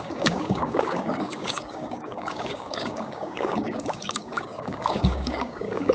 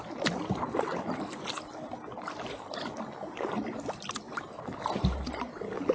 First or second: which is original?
second